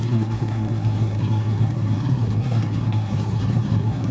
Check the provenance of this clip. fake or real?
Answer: fake